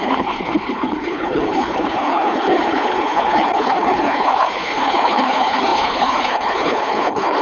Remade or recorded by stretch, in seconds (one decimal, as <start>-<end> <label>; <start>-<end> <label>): 0.0-7.4 remade